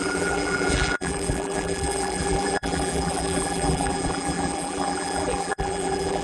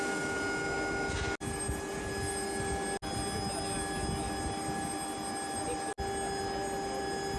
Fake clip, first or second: first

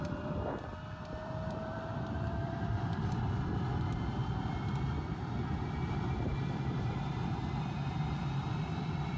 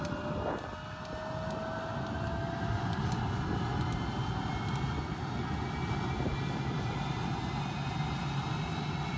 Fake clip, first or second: first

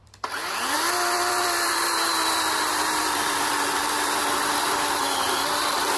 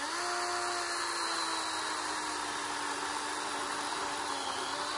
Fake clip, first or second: first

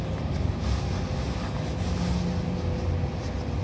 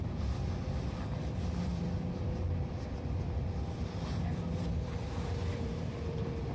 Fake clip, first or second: second